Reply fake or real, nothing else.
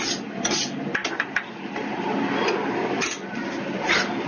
real